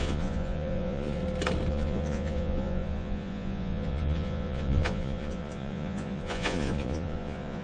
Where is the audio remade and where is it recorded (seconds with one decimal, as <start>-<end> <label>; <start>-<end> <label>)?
0.0-1.2 remade; 1.2-1.7 recorded; 1.7-7.6 remade